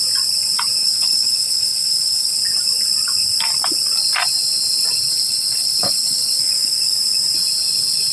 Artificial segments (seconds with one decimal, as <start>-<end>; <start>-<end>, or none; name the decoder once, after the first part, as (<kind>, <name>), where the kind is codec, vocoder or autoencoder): 0.8-2.4 (codec, HILCodec); 5.1-6.5